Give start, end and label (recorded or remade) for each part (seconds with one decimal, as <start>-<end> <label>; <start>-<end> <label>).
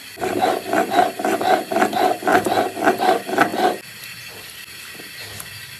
0.0-5.8 recorded